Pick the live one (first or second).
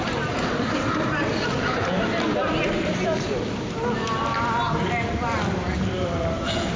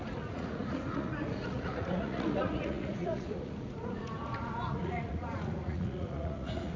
first